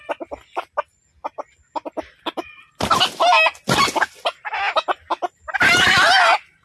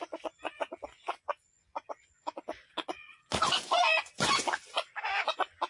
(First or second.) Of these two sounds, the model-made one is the second